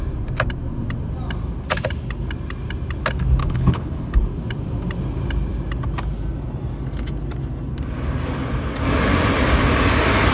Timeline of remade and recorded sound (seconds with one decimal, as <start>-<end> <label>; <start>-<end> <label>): 0.0-3.4 recorded; 3.4-4.2 remade; 4.2-10.3 recorded